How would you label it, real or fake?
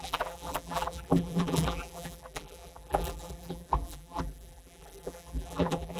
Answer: fake